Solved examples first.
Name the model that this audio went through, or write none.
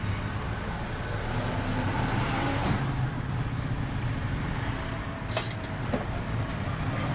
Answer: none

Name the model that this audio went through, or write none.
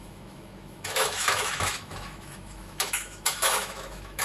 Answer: autoencoder, DAC-VAE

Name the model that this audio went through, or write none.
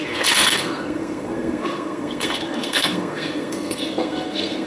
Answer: codec, SNAC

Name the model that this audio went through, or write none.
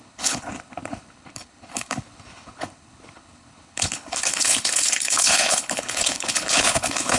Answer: codec, HILCodec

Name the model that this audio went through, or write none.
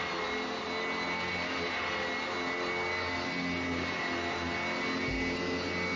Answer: none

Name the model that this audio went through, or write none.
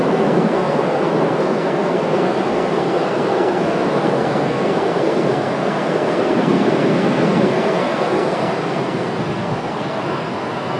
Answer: codec, SNAC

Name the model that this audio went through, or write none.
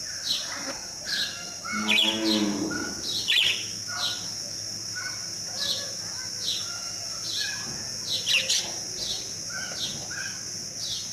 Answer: none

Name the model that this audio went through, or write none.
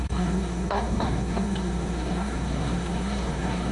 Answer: codec, SNAC